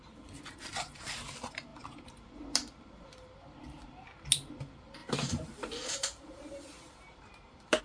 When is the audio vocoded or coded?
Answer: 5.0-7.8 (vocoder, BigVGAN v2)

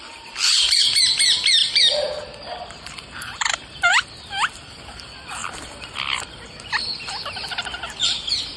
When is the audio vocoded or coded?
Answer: 0.0-3.9 (vocoder, BigVGAN v2); 4.9-5.4

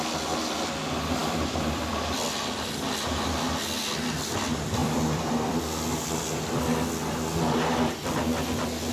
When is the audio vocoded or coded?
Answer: 1.2-1.9 (vocoder, BigVGAN v2); 4.8-5.6

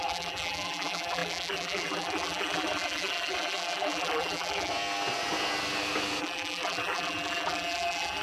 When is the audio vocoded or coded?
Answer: 0.0-4.7 (vocoder, BigVGAN v2); 6.2-8.2

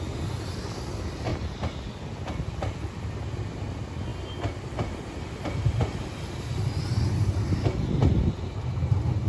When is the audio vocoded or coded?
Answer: 1.3-3.0 (vocoder, BigVGAN v2); 4.1-6.0

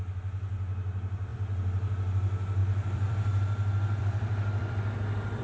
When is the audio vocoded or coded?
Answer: 1.3-1.9 (vocoder, BigVGAN v2); 2.6-5.4

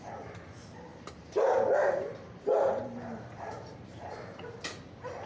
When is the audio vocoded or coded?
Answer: 0.9-4.1 (vocoder, BigVGAN v2)

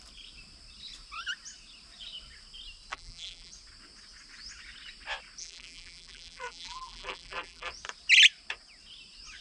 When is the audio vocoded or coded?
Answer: 2.9-3.5 (vocoder, BigVGAN v2); 5.4-7.7